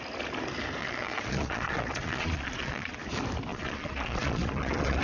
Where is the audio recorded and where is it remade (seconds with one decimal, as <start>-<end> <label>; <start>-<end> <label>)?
0.0-0.8 recorded; 0.8-3.0 remade; 3.0-3.5 recorded; 3.5-5.0 remade